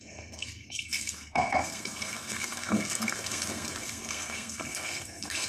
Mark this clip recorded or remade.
remade